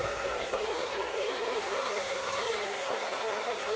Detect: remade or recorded remade